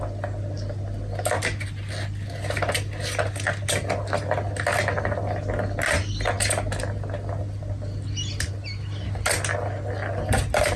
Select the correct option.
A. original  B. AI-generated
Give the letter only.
A